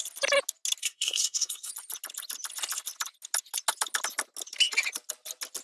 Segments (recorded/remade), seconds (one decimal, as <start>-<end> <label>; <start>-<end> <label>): 0.0-0.8 recorded; 0.8-1.7 remade; 1.7-5.6 recorded